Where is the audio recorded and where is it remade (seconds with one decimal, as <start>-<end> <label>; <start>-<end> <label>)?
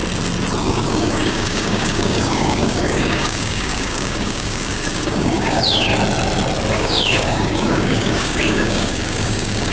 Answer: 0.0-0.6 recorded; 0.6-5.9 remade; 5.9-6.7 recorded; 6.7-9.7 remade